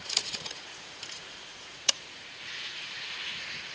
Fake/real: fake